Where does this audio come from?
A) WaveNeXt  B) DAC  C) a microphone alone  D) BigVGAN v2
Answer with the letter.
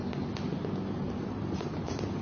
C